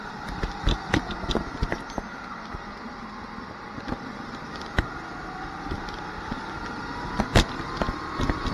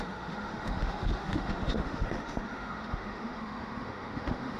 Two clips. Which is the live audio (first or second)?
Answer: first